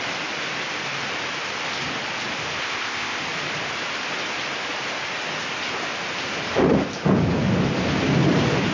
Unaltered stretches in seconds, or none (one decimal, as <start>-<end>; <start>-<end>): 0.0-2.6; 3.2-8.7